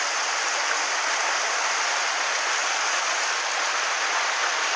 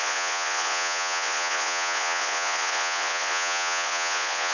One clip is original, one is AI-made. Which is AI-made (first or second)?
second